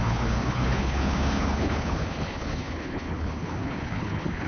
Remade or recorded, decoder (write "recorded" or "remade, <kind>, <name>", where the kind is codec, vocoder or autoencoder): remade, codec, HILCodec